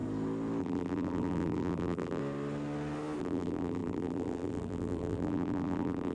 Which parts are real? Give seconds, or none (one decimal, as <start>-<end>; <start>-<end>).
0.0-0.6; 2.2-3.2